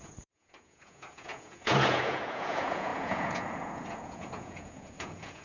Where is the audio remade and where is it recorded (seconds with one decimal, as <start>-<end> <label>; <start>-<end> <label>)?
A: 0.0-5.4 remade